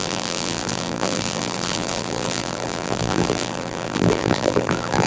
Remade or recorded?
remade